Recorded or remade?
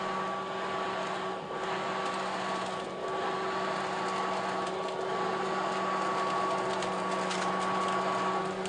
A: recorded